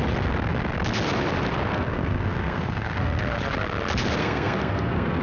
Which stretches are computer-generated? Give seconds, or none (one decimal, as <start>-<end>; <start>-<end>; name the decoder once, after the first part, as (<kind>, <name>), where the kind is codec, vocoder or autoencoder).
1.7-3.2 (codec, SNAC); 4.2-5.2